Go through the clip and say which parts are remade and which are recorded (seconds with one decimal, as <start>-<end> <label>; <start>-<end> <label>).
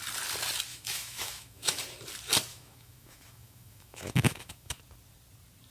0.0-0.7 recorded; 0.7-1.8 remade; 1.8-2.5 recorded; 2.5-4.8 remade; 4.8-5.7 recorded